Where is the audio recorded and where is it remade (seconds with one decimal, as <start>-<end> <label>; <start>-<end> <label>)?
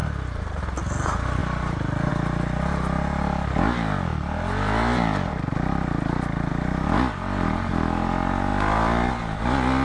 0.0-0.6 remade; 0.6-1.4 recorded; 1.4-2.1 remade; 2.1-8.5 recorded; 8.5-9.1 remade; 9.1-9.8 recorded